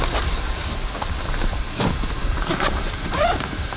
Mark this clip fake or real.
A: fake